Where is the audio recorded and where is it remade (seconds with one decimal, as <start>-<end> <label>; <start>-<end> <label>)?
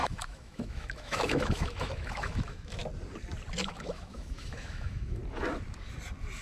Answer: 0.0-2.8 remade; 2.8-3.6 recorded; 3.6-5.2 remade; 5.2-6.4 recorded